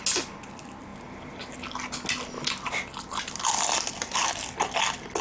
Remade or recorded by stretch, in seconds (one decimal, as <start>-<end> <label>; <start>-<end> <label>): 0.0-5.2 recorded

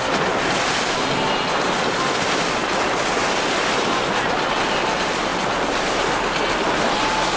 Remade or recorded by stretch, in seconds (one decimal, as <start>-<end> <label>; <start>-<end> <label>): 0.0-7.4 recorded

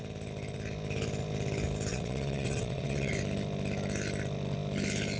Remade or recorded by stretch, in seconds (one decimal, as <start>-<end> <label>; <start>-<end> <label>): 0.0-1.9 recorded; 1.9-3.1 remade; 3.1-5.2 recorded

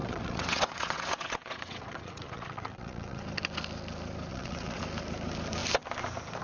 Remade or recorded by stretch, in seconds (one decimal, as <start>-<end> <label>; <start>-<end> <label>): 0.0-3.2 remade; 3.2-4.3 recorded; 4.3-4.8 remade; 4.8-6.4 recorded

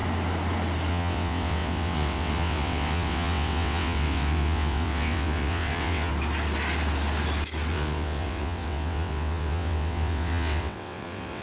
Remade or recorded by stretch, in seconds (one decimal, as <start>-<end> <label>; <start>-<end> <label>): 0.0-0.9 recorded; 0.9-6.1 remade; 6.1-7.7 recorded; 7.7-11.4 remade

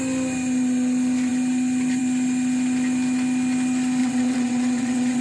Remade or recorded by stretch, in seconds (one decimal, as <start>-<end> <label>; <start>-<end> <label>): 0.0-4.0 recorded; 4.0-5.2 remade

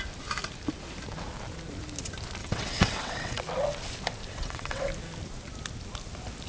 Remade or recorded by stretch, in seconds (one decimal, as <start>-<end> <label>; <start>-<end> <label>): 0.0-2.4 recorded; 2.4-3.4 remade; 3.4-4.3 recorded; 4.3-4.9 remade; 4.9-6.5 recorded